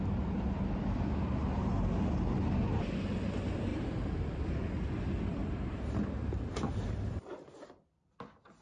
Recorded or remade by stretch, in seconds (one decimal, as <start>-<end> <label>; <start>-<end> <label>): 0.0-3.7 recorded; 3.7-4.4 remade; 4.4-5.3 recorded; 5.3-7.8 remade; 7.8-8.6 recorded